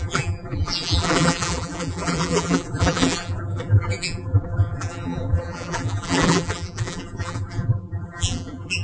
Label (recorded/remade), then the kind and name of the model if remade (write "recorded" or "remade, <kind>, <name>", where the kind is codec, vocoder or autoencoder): remade, vocoder, BigVGAN v2